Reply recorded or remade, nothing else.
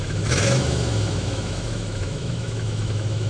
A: remade